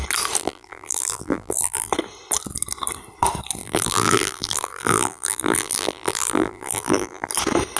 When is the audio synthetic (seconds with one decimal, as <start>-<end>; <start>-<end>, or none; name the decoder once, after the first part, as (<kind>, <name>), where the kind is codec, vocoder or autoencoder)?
0.4-1.9 (vocoder, BigVGAN v2); 3.6-7.3